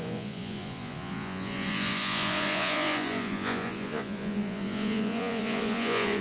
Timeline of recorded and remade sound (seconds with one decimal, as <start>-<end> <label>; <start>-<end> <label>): 0.0-6.2 remade